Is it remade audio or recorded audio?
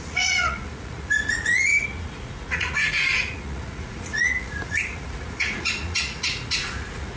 remade